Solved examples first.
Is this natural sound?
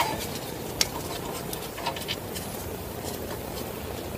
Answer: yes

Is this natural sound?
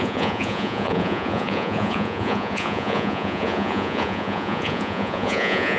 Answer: no